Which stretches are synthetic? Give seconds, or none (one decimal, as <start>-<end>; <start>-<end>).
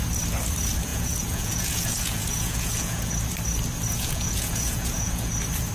0.9-3.1; 3.9-5.3